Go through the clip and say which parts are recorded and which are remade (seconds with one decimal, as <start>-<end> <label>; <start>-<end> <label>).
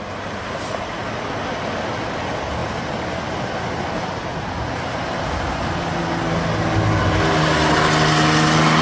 0.0-8.8 recorded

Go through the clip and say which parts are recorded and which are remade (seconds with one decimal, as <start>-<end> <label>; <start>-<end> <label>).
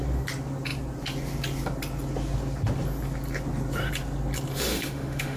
0.0-4.7 recorded; 4.7-5.4 remade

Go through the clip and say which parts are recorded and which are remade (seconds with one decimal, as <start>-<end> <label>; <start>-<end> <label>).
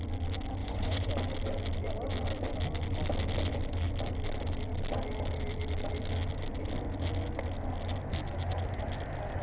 0.0-0.6 recorded; 0.6-1.1 remade; 1.1-9.4 recorded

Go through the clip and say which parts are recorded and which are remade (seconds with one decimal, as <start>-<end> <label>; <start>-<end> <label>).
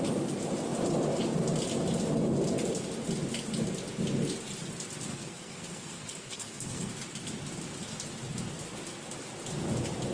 0.0-5.1 recorded; 5.1-6.9 remade; 6.9-10.1 recorded